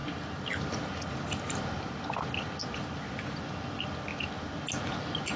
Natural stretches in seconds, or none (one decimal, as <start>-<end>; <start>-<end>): 1.7-2.6; 3.4-5.4

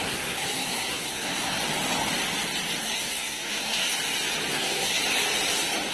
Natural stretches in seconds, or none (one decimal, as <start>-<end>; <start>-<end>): 1.6-2.8; 3.9-4.5; 5.0-5.9